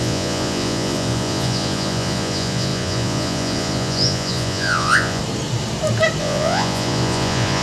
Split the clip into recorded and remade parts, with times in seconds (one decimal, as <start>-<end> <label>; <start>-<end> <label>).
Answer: 0.0-5.2 remade; 5.2-6.2 recorded; 6.2-7.6 remade